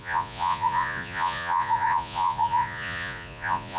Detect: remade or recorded remade